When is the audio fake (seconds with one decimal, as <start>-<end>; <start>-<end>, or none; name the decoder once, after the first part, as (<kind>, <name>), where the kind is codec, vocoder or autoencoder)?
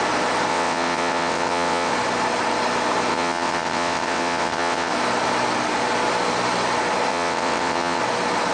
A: 0.5-1.9 (vocoder, WaveNeXt); 3.1-4.9; 7.1-8.0